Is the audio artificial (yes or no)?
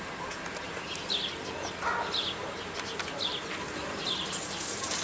no